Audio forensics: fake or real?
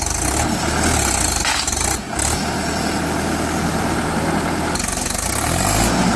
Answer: real